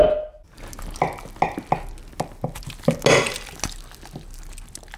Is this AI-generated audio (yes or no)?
no